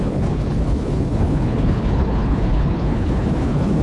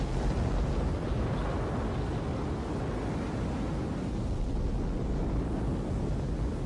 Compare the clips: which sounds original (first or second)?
second